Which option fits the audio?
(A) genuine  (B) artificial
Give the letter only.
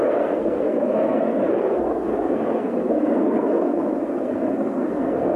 B